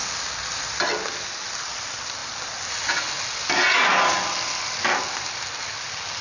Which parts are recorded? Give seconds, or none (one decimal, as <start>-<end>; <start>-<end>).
0.0-6.2